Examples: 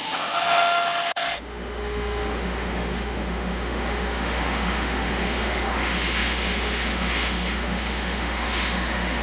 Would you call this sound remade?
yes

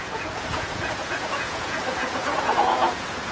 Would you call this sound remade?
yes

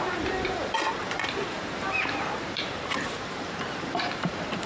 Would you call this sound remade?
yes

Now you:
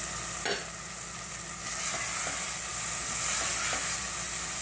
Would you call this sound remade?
no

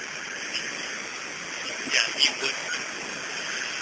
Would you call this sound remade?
no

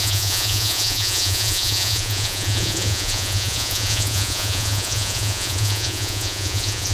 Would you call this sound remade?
yes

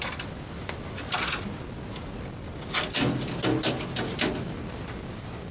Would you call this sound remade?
no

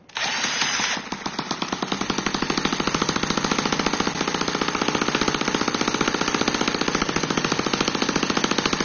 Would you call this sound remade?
no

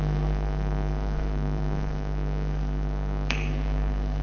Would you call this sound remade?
yes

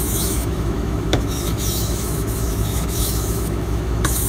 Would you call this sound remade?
yes